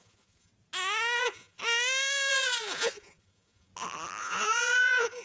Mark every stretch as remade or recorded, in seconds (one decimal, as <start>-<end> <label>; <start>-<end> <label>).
0.0-0.5 remade; 0.5-1.2 recorded; 1.2-1.6 remade; 1.6-2.3 recorded; 2.3-3.7 remade; 3.7-4.2 recorded; 4.2-5.2 remade